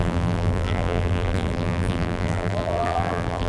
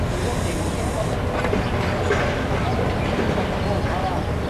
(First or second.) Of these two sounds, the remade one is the first